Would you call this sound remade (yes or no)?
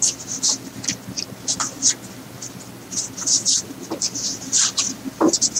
no